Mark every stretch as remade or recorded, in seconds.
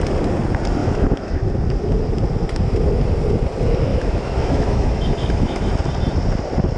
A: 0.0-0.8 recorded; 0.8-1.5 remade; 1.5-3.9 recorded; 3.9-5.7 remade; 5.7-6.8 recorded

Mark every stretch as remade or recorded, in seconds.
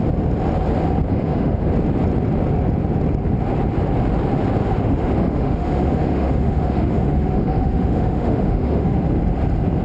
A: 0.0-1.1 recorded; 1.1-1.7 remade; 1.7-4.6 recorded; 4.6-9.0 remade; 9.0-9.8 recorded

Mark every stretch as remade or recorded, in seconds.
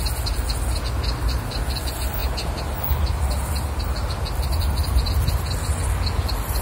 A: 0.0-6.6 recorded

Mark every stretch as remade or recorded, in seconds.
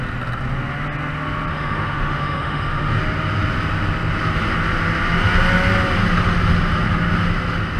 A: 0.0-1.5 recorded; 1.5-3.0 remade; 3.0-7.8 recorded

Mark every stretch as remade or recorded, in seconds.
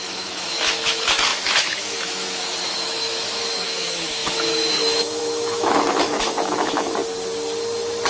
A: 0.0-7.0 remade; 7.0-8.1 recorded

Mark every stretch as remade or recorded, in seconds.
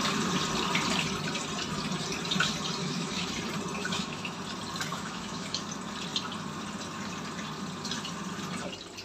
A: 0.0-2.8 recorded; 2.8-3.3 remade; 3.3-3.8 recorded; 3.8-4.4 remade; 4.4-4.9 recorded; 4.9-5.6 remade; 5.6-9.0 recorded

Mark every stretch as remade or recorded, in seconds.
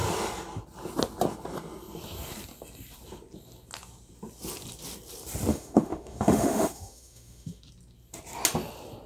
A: 0.0-5.5 recorded; 5.5-7.6 remade; 7.6-9.1 recorded